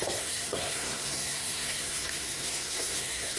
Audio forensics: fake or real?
fake